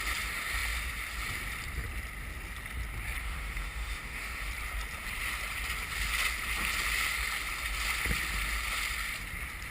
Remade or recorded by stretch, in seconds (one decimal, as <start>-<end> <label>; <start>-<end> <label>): 0.0-3.2 recorded; 3.2-4.5 remade; 4.5-9.7 recorded